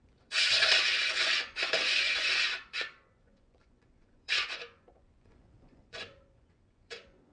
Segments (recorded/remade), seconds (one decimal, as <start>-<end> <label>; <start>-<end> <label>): 0.0-7.3 remade